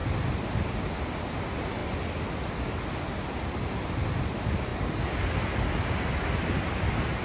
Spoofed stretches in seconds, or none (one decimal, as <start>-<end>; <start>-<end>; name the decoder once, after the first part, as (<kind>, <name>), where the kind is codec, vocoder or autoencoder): none